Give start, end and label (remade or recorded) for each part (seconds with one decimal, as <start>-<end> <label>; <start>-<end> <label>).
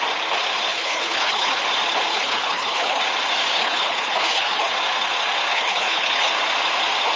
0.0-0.7 recorded; 0.7-1.6 remade; 1.6-2.1 recorded; 2.1-3.0 remade; 3.0-3.6 recorded; 3.6-4.7 remade; 4.7-5.5 recorded; 5.5-6.3 remade; 6.3-7.2 recorded